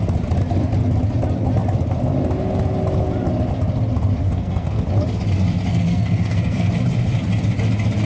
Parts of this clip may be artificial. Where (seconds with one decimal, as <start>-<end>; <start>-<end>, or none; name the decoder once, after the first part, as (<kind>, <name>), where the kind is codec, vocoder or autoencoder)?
4.2-4.8 (codec, SNAC); 5.7-6.7